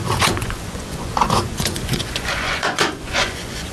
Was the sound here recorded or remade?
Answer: remade